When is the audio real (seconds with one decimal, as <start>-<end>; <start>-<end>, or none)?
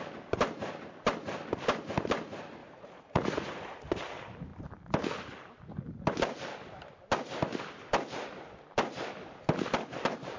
0.0-2.6; 3.9-10.4